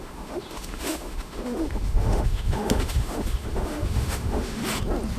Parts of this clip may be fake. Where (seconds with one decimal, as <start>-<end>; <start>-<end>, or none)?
0.0-4.6